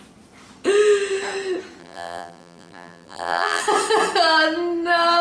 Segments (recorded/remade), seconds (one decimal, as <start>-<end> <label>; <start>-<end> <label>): 0.0-1.8 recorded; 1.8-3.6 remade; 3.6-5.2 recorded